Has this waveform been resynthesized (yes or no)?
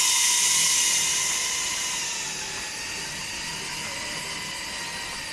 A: yes